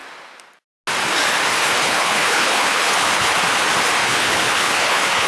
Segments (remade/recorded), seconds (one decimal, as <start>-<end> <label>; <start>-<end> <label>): 0.0-1.8 recorded; 1.8-3.3 remade; 3.3-4.0 recorded; 4.0-5.3 remade